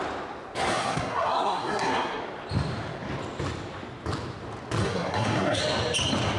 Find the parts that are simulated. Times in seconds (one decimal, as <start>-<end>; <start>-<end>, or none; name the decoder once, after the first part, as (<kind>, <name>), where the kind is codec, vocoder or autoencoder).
0.7-2.2 (codec, SNAC); 4.8-5.6